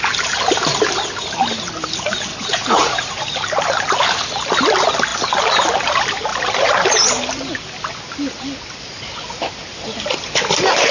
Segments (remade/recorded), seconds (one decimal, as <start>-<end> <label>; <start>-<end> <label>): 0.0-2.3 recorded; 2.3-3.2 remade; 3.2-10.9 recorded